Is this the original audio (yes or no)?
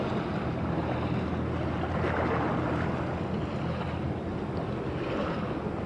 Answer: yes